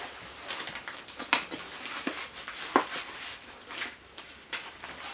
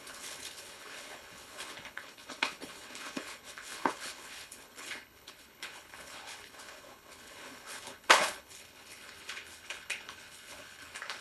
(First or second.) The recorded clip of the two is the first